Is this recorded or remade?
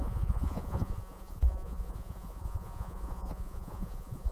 remade